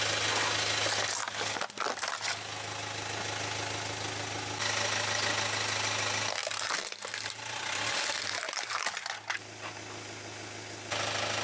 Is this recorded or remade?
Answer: recorded